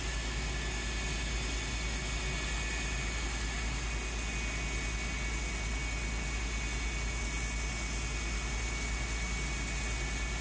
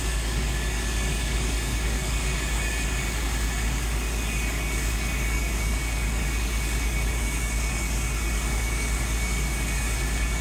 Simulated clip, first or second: second